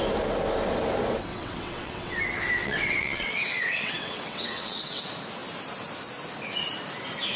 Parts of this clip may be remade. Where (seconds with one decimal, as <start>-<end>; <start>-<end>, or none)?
1.3-2.2; 2.6-5.0